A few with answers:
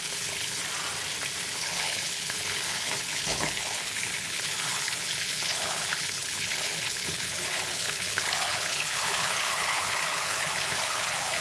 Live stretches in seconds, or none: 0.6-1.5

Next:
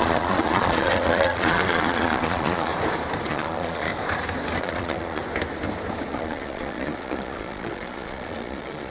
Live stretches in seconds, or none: 2.7-3.3; 3.9-4.6; 5.2-6.1